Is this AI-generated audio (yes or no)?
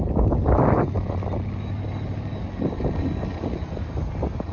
no